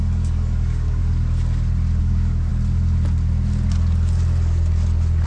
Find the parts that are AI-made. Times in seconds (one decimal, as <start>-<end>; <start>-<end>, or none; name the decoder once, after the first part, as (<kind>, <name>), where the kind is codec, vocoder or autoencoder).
0.0-1.0 (codec, DAC); 2.0-2.5

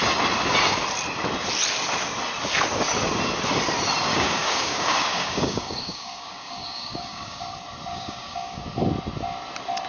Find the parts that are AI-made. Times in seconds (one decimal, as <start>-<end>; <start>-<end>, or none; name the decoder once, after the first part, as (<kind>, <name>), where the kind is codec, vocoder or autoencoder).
4.1-7.4 (codec, DAC); 7.9-8.6

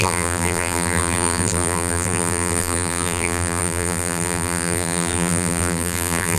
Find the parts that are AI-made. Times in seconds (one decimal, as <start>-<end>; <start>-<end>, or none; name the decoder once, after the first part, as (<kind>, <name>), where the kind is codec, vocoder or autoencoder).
0.0-6.4 (vocoder, BigVGAN v2)